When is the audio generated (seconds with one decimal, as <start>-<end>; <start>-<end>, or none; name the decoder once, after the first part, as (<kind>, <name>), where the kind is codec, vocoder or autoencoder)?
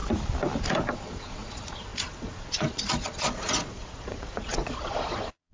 0.9-5.5 (vocoder, Vocos)